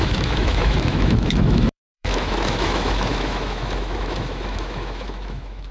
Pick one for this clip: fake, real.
fake